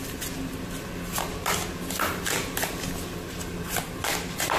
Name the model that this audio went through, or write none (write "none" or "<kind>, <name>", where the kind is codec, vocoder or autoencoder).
none